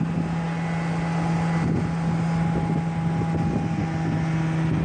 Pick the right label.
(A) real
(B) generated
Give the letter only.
A